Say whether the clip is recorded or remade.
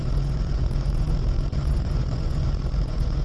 remade